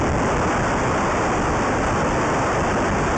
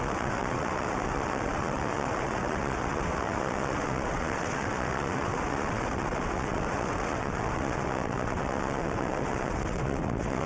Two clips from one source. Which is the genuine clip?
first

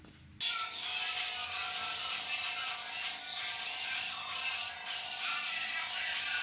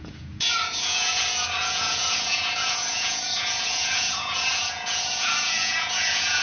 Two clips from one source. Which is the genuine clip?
first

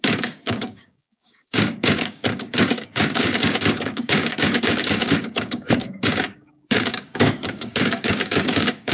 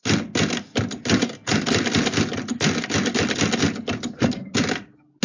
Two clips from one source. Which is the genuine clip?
second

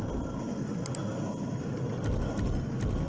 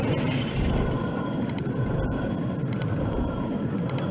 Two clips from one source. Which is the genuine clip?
first